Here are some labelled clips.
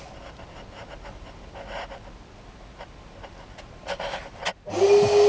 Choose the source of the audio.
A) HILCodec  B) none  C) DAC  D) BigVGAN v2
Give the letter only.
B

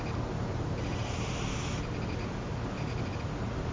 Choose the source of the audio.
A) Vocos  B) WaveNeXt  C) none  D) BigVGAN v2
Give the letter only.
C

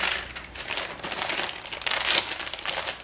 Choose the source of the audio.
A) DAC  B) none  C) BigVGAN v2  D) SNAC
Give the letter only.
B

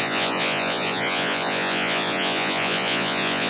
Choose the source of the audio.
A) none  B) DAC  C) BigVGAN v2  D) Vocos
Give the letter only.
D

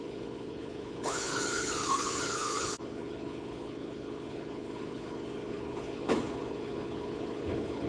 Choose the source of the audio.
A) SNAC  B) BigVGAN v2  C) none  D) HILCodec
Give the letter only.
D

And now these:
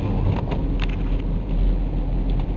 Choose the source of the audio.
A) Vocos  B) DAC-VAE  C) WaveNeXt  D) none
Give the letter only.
D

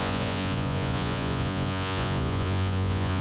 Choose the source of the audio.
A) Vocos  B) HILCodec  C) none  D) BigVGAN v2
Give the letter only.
A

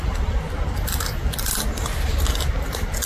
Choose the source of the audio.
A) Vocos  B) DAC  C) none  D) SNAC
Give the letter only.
C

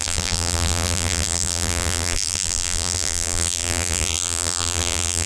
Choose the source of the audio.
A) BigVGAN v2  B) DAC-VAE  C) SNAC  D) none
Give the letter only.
A